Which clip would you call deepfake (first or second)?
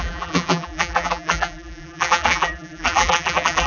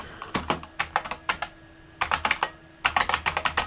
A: first